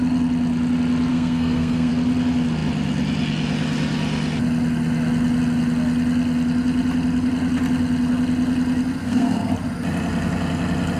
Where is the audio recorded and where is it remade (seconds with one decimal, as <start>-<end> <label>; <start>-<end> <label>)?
0.0-1.1 recorded; 1.1-1.9 remade; 1.9-9.0 recorded; 9.0-9.5 remade; 9.5-11.0 recorded